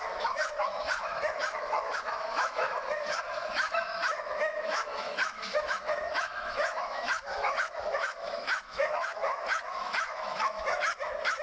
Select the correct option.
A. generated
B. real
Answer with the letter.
A